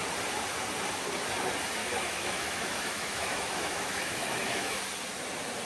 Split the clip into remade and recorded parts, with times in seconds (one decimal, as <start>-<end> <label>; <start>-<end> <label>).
0.0-1.8 recorded; 1.8-4.8 remade; 4.8-5.7 recorded